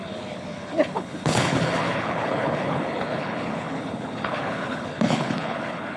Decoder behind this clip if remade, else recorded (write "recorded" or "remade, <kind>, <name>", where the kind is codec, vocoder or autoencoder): remade, codec, HILCodec